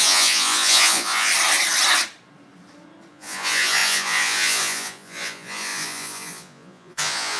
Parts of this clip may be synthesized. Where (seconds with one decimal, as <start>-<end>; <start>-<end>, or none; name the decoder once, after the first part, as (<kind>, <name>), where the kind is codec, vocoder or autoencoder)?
0.0-1.3 (vocoder, Vocos); 3.1-7.4